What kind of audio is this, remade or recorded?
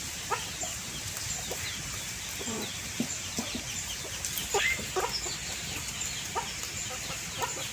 recorded